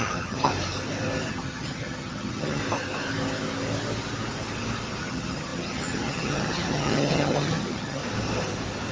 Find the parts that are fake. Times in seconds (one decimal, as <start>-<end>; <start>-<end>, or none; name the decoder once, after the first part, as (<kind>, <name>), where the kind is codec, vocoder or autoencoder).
0.0-0.5 (vocoder, HiFi-GAN); 1.3-2.6; 5.0-8.0